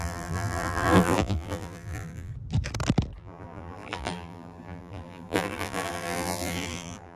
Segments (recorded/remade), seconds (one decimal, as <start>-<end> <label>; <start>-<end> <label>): 0.0-2.3 remade; 2.3-3.2 recorded; 3.2-7.2 remade

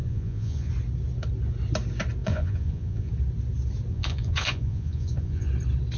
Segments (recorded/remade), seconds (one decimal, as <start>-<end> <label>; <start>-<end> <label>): 0.0-0.7 remade; 0.7-2.2 recorded; 2.2-3.1 remade; 3.1-3.9 recorded; 3.9-5.5 remade; 5.5-6.0 recorded

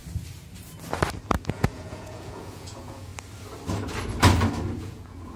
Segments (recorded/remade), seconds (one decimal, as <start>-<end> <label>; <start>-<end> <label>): 0.0-1.5 recorded; 1.5-3.1 remade; 3.1-4.8 recorded; 4.8-5.4 remade

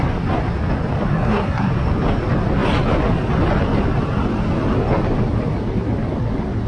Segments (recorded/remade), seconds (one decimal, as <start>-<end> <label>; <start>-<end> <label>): 0.0-1.1 recorded; 1.1-1.7 remade; 1.7-6.7 recorded

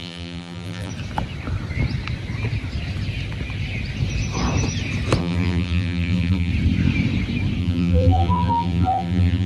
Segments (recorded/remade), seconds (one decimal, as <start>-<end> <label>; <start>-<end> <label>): 0.0-0.9 remade; 0.9-5.2 recorded; 5.2-6.5 remade; 6.5-7.6 recorded; 7.6-9.5 remade

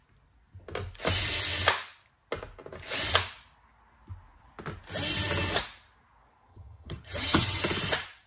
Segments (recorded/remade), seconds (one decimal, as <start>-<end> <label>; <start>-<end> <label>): 0.0-6.5 recorded; 6.5-7.6 remade; 7.6-8.3 recorded

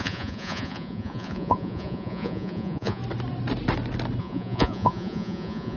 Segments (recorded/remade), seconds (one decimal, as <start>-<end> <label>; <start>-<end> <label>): 0.0-3.0 remade; 3.0-4.2 recorded; 4.2-5.8 remade

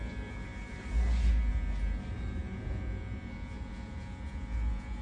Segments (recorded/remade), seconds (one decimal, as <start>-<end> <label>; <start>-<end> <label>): 0.0-2.4 recorded; 2.4-5.0 remade